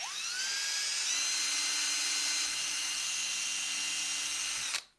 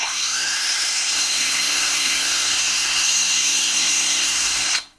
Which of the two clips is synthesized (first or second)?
second